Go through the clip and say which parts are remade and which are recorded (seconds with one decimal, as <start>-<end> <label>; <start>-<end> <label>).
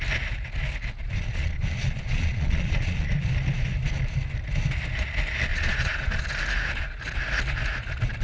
0.0-1.0 recorded; 1.0-3.1 remade; 3.1-5.5 recorded; 5.5-6.2 remade; 6.2-8.2 recorded